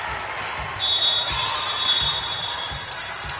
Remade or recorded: recorded